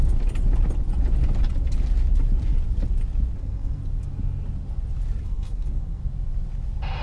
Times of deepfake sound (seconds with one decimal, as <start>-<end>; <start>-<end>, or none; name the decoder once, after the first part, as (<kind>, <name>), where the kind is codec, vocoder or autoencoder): 3.4-3.8 (codec, SNAC); 5.2-6.0